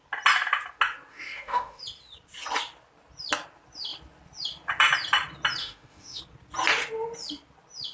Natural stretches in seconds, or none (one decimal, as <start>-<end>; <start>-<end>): 0.0-1.1; 1.8-5.6; 6.2-7.9